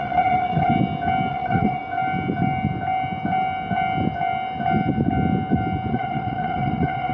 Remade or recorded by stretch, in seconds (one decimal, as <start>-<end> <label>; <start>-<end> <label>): 0.0-0.7 remade; 0.7-1.3 recorded; 1.3-1.8 remade; 1.8-5.9 recorded; 5.9-7.1 remade